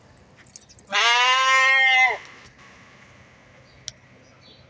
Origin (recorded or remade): recorded